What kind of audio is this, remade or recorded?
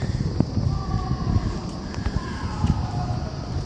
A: recorded